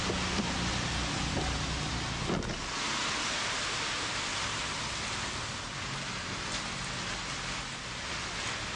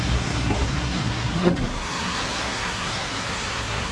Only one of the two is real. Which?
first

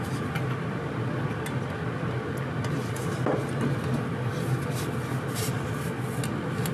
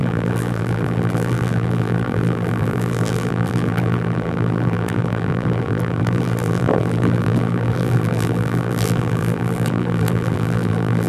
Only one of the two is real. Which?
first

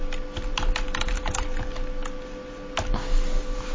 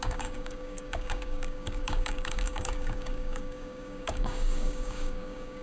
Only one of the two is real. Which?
first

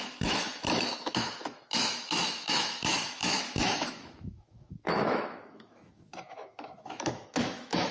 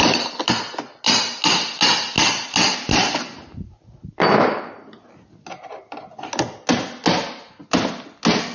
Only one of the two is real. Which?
second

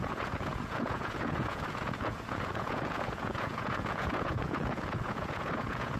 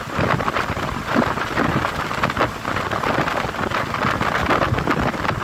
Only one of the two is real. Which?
second